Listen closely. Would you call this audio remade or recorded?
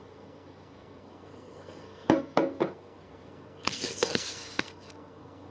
remade